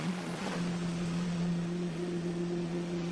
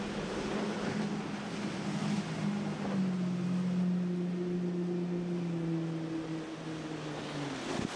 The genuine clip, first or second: second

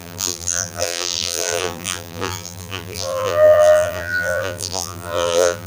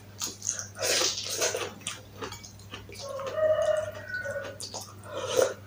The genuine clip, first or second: second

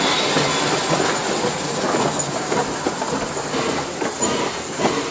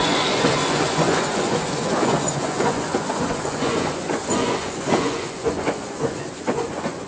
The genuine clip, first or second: first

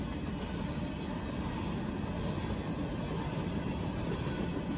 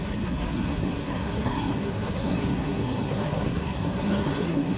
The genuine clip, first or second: first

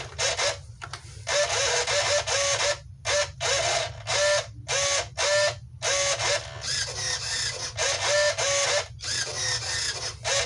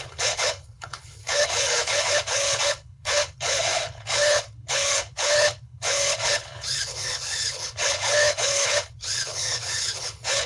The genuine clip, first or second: first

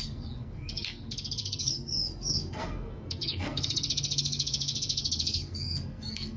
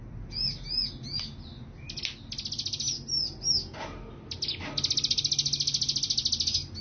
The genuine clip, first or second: second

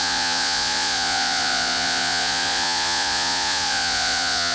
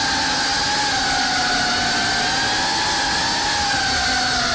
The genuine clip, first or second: second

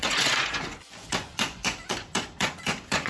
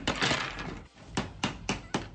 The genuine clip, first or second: second